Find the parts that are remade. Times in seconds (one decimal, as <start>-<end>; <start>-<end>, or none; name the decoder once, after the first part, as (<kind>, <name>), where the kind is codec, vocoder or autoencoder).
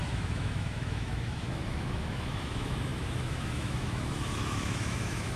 0.0-5.4 (autoencoder, DAC-VAE)